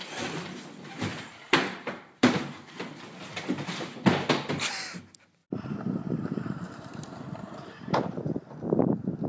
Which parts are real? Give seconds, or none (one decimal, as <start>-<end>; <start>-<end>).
0.0-1.1; 2.9-5.4; 8.2-9.3

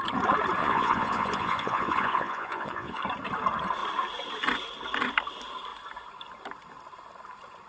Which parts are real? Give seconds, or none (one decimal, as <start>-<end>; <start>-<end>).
0.0-0.6; 3.0-7.7

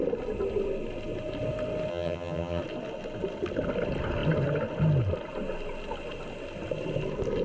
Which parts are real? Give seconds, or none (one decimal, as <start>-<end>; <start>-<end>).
0.0-1.9; 2.6-7.4

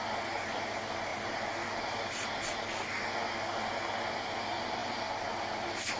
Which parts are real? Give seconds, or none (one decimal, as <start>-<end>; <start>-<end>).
0.0-1.1; 2.4-4.8

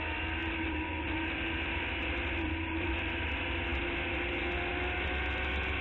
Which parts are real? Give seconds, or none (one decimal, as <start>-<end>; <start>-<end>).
0.0-5.8

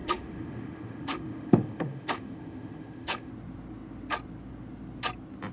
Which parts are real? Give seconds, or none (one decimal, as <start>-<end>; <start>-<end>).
3.3-5.5

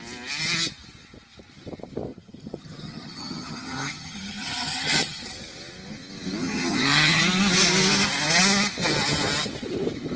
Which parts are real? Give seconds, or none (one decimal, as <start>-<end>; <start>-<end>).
0.0-2.1; 5.2-6.4; 7.2-10.2